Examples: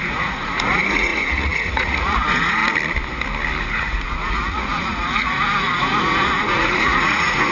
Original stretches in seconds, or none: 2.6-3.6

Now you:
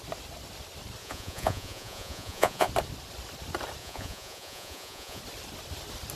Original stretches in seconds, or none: 0.0-1.0; 2.7-3.8; 5.2-6.2

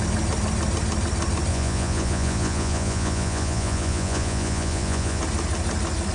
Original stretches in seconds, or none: 0.0-1.5; 5.2-6.1

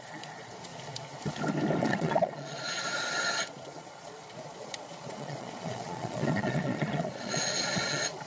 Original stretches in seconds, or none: 0.7-1.8

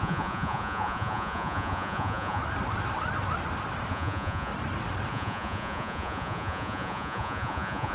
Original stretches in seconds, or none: 2.4-3.9; 4.5-5.1

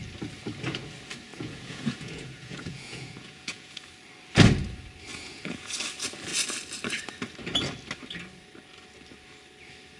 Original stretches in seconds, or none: 0.0-1.3; 3.8-5.1; 5.7-10.0

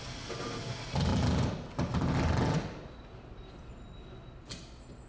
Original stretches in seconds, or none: 0.0-5.1